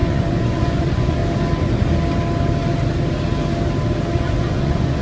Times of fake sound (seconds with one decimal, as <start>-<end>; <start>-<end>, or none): 0.0-1.2; 4.2-5.0